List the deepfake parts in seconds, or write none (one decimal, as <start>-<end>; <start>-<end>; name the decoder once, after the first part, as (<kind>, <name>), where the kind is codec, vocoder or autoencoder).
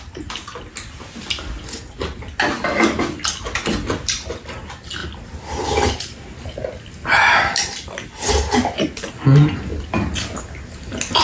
none